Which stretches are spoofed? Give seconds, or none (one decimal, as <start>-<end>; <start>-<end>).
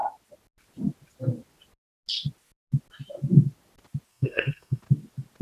4.1-4.8